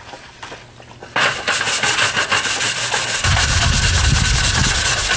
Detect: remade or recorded recorded